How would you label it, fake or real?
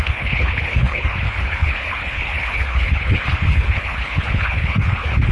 fake